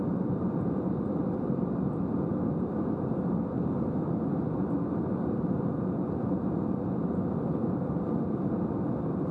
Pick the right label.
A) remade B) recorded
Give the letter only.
A